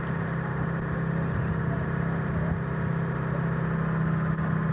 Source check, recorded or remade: recorded